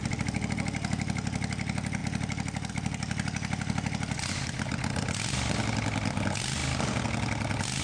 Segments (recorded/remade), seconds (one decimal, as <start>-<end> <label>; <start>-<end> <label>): 0.0-7.8 recorded